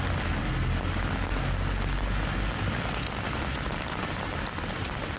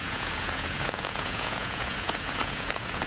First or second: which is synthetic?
second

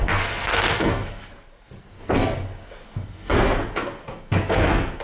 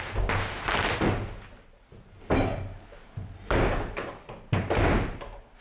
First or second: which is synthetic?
first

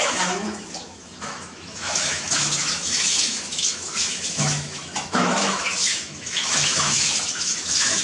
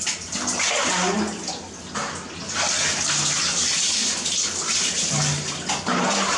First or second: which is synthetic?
first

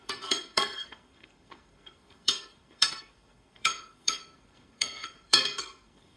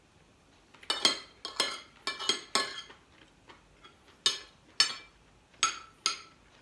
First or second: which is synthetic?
first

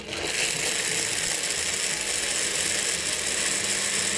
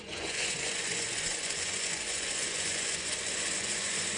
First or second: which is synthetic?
second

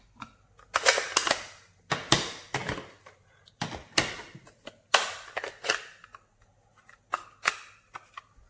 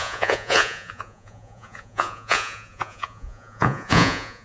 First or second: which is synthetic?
second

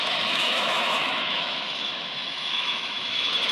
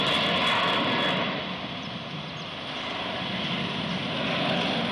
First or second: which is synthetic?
first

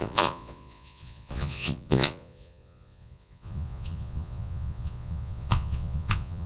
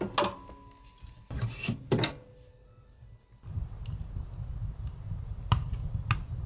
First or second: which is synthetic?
first